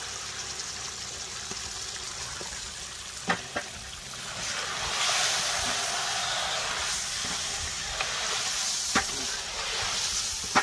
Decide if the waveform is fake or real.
real